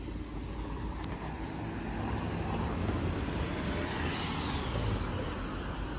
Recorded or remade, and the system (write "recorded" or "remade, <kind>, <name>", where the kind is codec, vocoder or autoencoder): recorded